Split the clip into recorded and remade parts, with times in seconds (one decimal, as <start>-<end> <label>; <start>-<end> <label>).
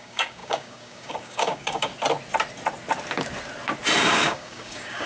0.0-1.9 remade; 1.9-4.1 recorded; 4.1-5.1 remade